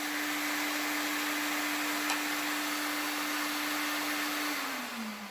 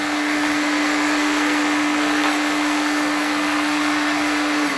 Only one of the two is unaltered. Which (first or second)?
first